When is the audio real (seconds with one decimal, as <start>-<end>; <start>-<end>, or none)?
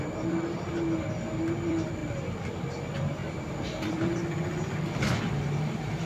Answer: 2.0-2.6